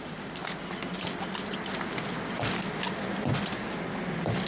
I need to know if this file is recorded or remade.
recorded